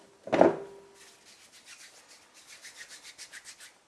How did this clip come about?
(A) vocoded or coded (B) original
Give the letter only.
B